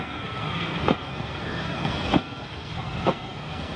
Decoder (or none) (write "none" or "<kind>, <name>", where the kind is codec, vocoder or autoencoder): codec, SNAC